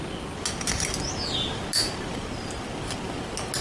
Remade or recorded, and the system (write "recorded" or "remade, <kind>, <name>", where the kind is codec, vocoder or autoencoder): recorded